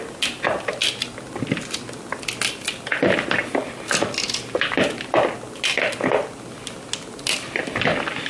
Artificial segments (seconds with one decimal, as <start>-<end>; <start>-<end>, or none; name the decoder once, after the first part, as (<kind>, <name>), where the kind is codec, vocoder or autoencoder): none